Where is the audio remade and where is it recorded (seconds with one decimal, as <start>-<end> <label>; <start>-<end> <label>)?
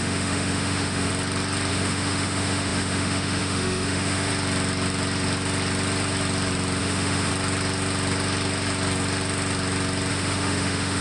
0.0-1.1 remade; 1.1-1.7 recorded; 1.7-4.3 remade; 4.3-6.8 recorded; 6.8-7.3 remade; 7.3-10.1 recorded; 10.1-11.0 remade